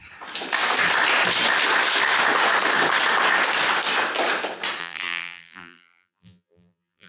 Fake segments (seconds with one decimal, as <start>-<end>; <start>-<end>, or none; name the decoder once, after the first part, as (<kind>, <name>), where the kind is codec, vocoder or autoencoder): 4.8-7.1 (vocoder, BigVGAN v2)

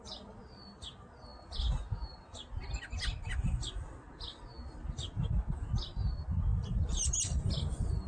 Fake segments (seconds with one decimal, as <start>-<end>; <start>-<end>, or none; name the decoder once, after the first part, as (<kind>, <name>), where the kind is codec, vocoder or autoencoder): 6.5-7.1 (vocoder, BigVGAN v2)